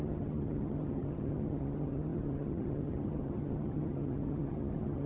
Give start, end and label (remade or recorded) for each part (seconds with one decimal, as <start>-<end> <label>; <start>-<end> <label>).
0.0-5.1 remade